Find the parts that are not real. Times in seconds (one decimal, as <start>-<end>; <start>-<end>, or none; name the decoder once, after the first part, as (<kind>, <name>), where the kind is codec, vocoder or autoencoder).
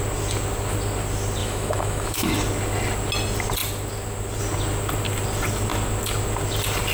1.4-2.3 (autoencoder, DAC-VAE)